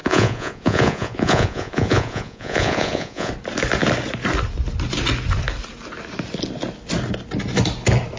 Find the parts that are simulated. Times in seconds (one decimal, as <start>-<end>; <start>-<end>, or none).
0.0-3.3